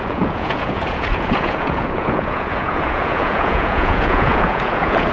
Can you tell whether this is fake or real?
fake